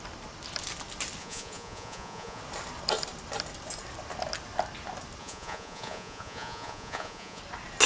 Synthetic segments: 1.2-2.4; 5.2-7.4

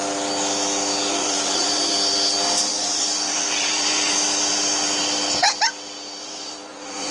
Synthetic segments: 1.2-1.8; 2.7-4.1; 6.2-7.1

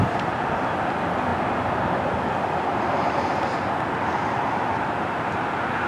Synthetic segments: none